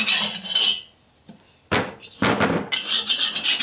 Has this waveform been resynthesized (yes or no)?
no